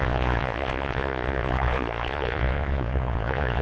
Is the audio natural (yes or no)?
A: no